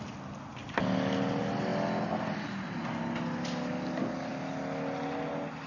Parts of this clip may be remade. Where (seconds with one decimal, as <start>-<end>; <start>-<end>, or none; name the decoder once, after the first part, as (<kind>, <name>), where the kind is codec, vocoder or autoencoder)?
none